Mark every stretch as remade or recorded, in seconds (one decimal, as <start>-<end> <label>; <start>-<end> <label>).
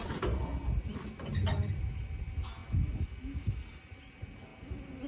0.0-5.1 recorded